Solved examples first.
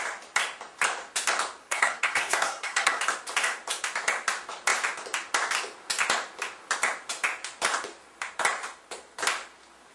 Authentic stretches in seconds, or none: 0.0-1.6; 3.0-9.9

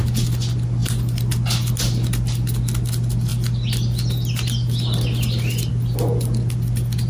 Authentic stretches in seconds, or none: 0.0-7.1

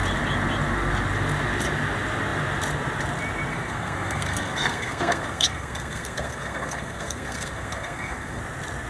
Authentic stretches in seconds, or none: 0.0-3.5; 8.4-8.9

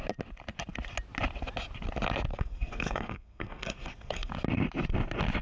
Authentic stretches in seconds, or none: 0.0-2.3; 4.3-5.4